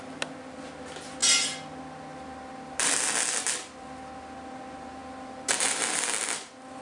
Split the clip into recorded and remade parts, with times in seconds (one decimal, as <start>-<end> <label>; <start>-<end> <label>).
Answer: 0.0-6.8 recorded